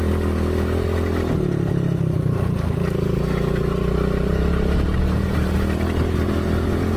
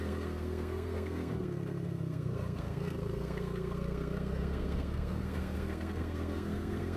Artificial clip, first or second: second